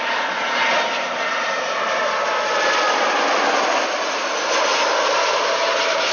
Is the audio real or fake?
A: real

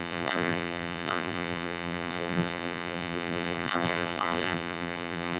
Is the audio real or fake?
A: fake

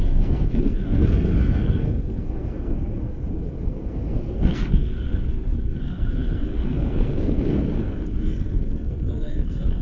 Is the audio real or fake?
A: fake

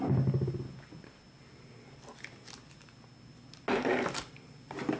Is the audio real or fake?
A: real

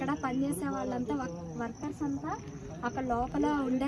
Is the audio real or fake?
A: real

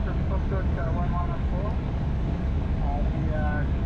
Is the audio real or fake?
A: fake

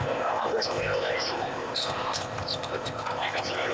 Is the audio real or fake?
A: fake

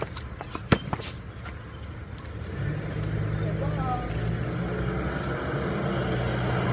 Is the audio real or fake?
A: real